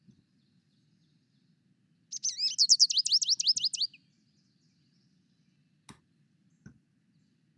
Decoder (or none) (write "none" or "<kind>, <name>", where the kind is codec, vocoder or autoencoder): none